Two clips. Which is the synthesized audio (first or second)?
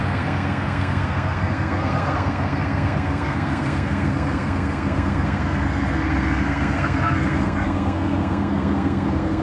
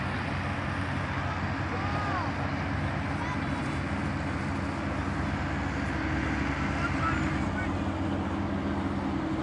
first